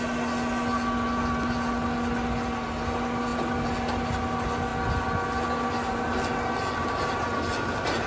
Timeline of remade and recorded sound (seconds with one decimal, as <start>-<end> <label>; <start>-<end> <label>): 0.0-8.1 recorded